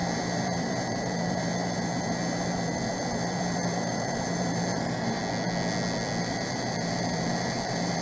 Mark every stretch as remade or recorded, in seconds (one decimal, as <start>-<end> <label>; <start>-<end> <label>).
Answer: 0.0-5.2 remade; 5.2-6.2 recorded; 6.2-8.0 remade